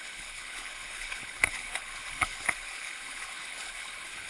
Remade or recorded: remade